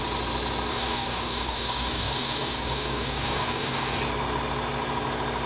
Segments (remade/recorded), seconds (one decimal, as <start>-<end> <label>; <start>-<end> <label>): 0.0-0.7 recorded; 0.7-4.0 remade; 4.0-5.5 recorded